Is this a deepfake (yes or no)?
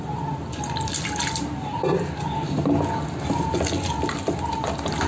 no